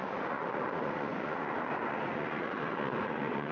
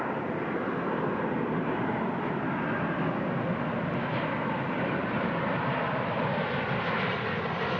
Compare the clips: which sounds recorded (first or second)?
second